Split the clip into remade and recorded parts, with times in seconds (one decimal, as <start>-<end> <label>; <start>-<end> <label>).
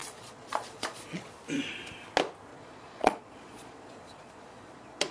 0.0-1.3 remade; 1.3-2.5 recorded; 2.5-5.1 remade